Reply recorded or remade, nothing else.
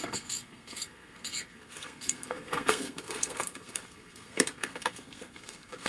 remade